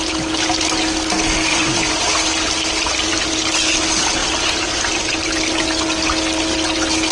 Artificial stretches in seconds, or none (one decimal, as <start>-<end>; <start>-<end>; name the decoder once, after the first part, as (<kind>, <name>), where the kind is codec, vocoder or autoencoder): 1.5-2.0 (vocoder, Vocos)